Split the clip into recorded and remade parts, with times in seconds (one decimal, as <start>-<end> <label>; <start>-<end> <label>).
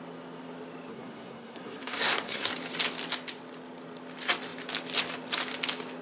0.0-0.9 recorded; 0.9-2.5 remade; 2.5-6.0 recorded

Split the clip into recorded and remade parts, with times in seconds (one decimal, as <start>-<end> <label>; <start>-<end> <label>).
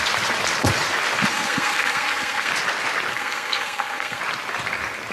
0.0-1.3 recorded; 1.3-2.5 remade; 2.5-3.1 recorded; 3.1-4.2 remade; 4.2-5.1 recorded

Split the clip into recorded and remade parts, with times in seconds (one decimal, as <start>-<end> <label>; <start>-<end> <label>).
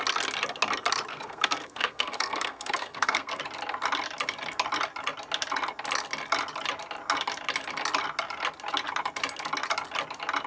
0.0-1.1 recorded; 1.1-3.4 remade; 3.4-10.5 recorded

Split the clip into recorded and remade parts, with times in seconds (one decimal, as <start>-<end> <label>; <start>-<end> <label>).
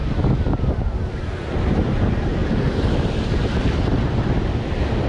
0.0-5.1 recorded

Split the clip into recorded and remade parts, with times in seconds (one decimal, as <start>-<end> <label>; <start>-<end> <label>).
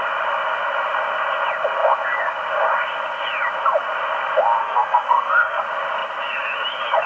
0.0-4.6 recorded; 4.6-5.6 remade; 5.6-7.1 recorded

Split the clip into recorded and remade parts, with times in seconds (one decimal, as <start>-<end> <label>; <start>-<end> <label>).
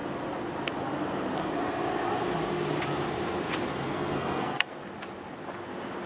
0.0-3.7 recorded; 3.7-4.8 remade; 4.8-6.1 recorded